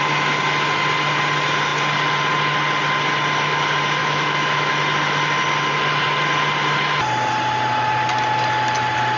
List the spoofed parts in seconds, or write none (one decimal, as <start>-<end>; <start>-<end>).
4.0-4.7